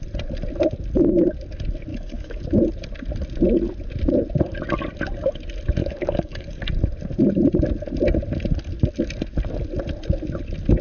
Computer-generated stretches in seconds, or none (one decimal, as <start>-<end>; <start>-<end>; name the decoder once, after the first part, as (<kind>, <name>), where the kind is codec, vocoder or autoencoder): 1.9-2.4 (codec, DAC); 5.8-6.6